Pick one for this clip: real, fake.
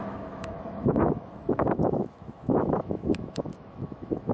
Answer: fake